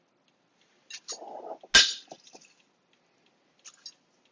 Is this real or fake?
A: real